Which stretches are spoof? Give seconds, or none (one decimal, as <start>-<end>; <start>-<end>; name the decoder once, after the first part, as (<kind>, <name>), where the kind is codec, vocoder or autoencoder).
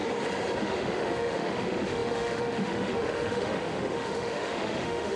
0.6-5.2 (autoencoder, DAC-VAE)